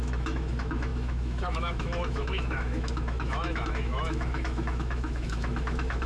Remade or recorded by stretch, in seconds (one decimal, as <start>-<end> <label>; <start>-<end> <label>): 0.0-6.1 remade